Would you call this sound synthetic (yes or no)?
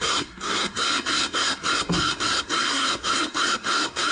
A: yes